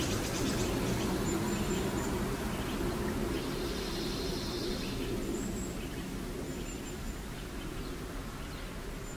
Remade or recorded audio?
recorded